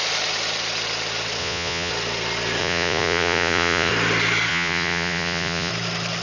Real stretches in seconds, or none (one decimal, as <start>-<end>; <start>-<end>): 0.0-1.4; 1.9-2.6; 3.9-4.5; 5.7-6.2